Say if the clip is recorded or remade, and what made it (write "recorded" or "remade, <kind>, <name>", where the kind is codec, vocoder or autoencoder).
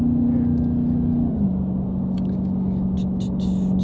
recorded